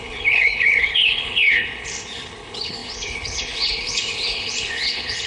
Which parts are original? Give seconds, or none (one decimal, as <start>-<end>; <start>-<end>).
none